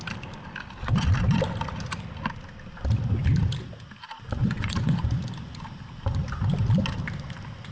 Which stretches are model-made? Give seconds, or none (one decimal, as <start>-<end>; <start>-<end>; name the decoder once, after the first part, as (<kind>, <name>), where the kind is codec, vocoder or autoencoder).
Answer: 4.4-5.1 (vocoder, Vocos)